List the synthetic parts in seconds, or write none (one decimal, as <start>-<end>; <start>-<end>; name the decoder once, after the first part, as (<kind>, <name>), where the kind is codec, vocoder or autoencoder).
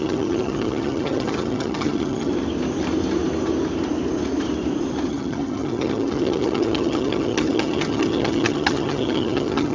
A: 0.0-2.3 (vocoder, HiFi-GAN); 5.1-9.7